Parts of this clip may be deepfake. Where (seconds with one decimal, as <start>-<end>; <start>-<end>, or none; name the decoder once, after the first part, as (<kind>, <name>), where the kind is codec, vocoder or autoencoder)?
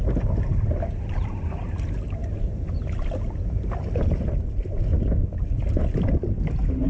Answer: none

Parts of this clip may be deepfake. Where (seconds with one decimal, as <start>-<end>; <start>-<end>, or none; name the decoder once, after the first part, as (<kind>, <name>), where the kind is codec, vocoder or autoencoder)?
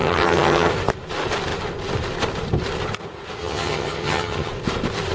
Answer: 0.0-0.7 (vocoder, HiFi-GAN); 3.4-4.5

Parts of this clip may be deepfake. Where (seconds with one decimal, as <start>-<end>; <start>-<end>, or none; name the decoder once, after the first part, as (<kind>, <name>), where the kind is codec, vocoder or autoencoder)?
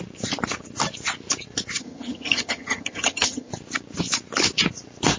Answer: 1.8-3.5 (vocoder, HiFi-GAN)